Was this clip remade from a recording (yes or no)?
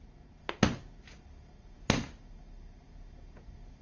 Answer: no